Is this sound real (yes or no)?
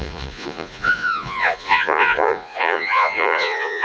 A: no